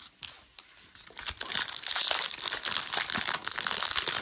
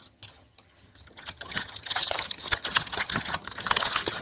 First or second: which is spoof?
second